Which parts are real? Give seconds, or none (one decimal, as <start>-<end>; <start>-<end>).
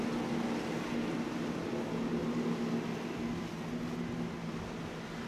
0.0-5.3